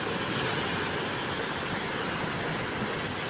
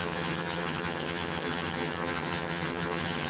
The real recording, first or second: first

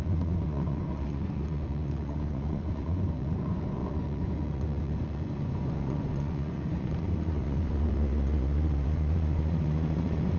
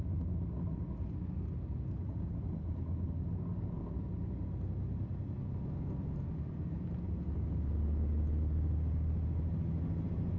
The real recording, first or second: second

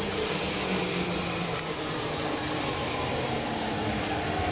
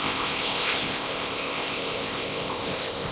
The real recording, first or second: first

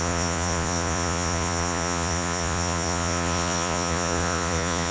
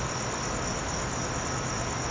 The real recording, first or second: second